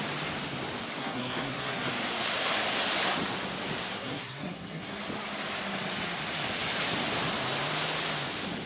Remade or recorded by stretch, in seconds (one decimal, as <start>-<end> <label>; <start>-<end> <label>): 0.0-1.0 recorded; 1.0-1.9 remade; 1.9-3.9 recorded; 3.9-5.0 remade; 5.0-8.7 recorded